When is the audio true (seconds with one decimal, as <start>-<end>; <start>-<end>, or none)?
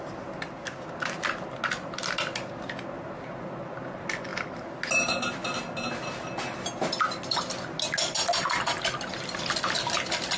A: 0.0-10.4